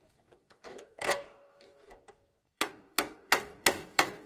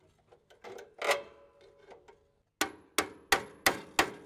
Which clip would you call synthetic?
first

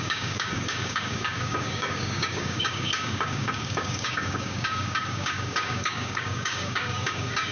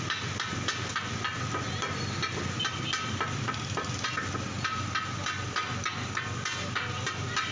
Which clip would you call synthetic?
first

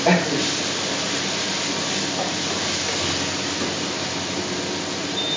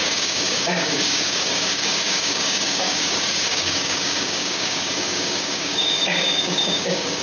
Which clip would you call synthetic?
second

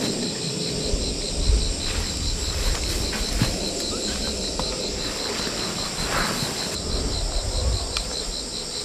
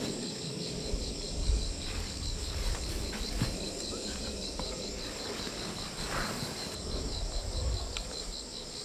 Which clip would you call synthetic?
second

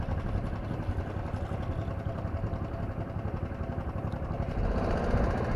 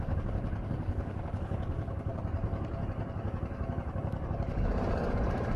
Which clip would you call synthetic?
second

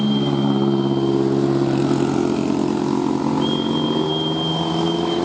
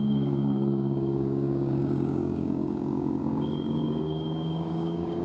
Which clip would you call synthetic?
second